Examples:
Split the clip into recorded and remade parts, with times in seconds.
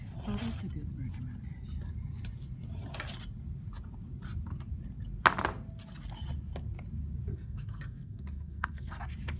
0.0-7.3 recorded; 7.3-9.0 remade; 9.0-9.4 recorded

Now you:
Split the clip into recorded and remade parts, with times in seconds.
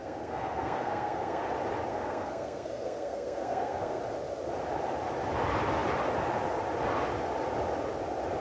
0.0-1.4 remade; 1.4-1.9 recorded; 1.9-4.0 remade; 4.0-8.4 recorded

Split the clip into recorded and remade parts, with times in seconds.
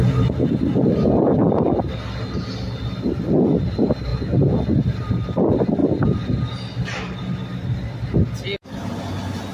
0.0-9.5 recorded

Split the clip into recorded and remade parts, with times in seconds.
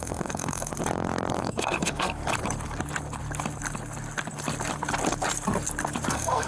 0.0-0.7 remade; 0.7-1.4 recorded; 1.4-2.2 remade; 2.2-6.1 recorded; 6.1-6.5 remade